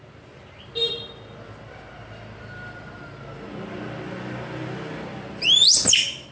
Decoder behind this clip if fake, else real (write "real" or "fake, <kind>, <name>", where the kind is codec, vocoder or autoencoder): real